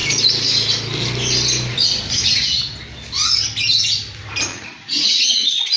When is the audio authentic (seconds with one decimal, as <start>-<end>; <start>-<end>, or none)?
0.0-4.5